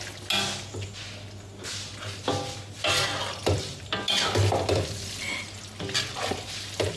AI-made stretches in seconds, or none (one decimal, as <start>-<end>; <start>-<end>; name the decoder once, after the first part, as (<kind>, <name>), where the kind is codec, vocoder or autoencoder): none